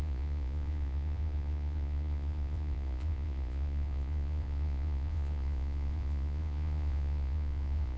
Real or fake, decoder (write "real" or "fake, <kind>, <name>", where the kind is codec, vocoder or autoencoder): fake, vocoder, Vocos